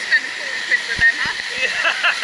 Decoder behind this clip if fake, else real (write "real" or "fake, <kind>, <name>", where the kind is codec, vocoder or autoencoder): real